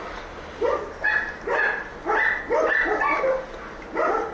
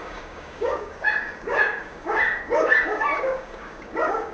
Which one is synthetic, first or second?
second